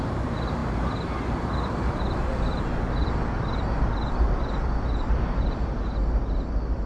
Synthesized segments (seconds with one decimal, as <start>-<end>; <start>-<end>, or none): 0.0-2.5; 3.3-6.0